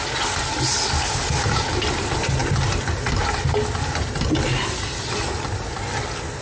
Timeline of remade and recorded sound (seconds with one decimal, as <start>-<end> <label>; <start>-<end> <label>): 0.0-6.4 recorded